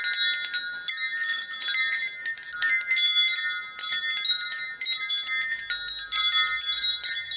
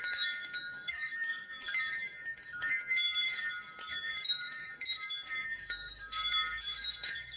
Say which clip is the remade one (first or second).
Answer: second